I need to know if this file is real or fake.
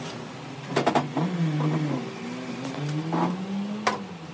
real